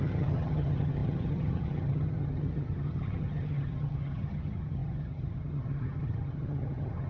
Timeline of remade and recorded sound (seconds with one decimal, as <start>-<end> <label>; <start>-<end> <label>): 0.0-7.1 remade